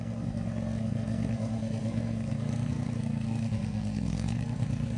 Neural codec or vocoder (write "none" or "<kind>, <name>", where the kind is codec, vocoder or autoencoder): codec, SNAC